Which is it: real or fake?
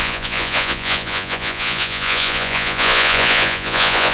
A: fake